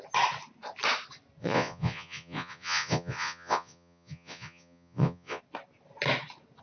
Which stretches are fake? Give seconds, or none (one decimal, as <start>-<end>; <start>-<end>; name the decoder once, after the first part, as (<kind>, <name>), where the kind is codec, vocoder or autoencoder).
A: 1.4-5.4 (vocoder, Vocos)